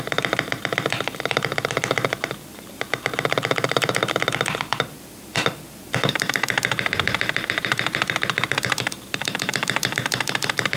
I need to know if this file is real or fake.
fake